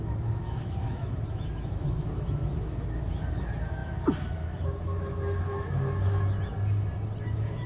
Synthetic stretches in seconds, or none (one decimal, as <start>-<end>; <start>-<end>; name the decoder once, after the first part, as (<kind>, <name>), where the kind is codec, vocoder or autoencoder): 0.0-6.5 (autoencoder, DAC-VAE); 7.2-7.7